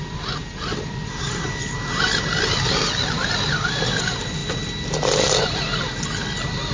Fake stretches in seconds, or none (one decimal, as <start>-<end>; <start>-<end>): none